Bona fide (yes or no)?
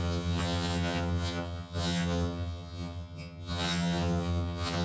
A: no